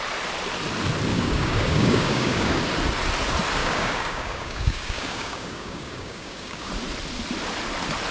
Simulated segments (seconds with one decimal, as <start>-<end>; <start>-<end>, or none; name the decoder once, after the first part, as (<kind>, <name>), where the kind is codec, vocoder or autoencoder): 1.1-2.6 (codec, DAC); 3.6-6.7